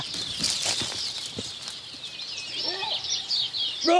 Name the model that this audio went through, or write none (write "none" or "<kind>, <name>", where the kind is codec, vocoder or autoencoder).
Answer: none